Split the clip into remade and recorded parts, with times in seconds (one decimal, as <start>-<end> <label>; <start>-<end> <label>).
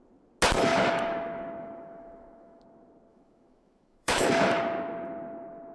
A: 0.0-0.7 recorded; 0.7-2.6 remade; 2.6-3.1 recorded; 3.1-4.6 remade; 4.6-5.7 recorded